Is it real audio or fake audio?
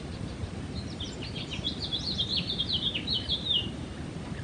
fake